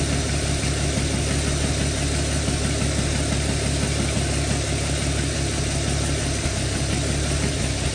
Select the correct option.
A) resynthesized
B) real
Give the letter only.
B